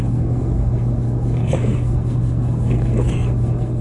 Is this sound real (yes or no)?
no